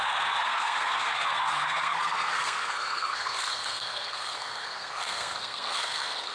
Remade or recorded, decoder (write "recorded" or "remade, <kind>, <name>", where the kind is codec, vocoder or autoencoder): remade, codec, SNAC